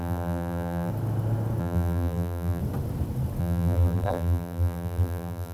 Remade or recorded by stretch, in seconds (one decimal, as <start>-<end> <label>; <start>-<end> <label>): 0.0-0.9 remade; 0.9-1.6 recorded; 1.6-2.6 remade; 2.6-3.4 recorded; 3.4-5.5 remade